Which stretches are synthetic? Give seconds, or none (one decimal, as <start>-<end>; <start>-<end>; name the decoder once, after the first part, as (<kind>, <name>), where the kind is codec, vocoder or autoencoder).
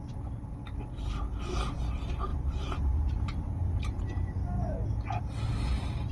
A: 0.0-0.6 (vocoder, BigVGAN v2); 1.9-4.4; 5.2-6.1